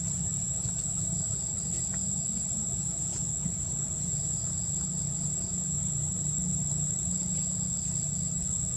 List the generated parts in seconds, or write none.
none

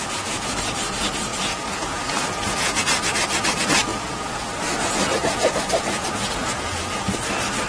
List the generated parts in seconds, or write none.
0.0-0.6 (vocoder, Vocos); 1.3-2.8; 3.9-7.0

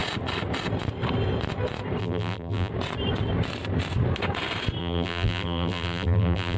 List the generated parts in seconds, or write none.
2.0-2.7 (vocoder, BigVGAN v2); 4.8-6.6